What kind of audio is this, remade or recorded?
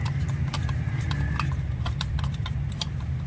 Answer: recorded